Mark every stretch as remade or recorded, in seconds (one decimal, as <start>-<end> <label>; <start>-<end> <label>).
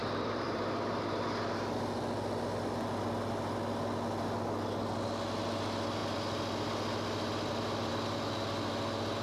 0.0-0.9 remade; 0.9-9.2 recorded